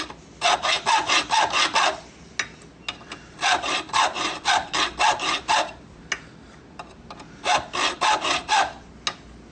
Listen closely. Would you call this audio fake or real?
real